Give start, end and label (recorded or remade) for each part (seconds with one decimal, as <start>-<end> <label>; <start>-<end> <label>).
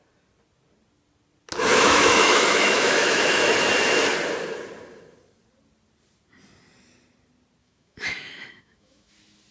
0.0-1.7 recorded; 1.7-3.5 remade; 3.5-7.6 recorded; 7.6-9.1 remade; 9.1-9.5 recorded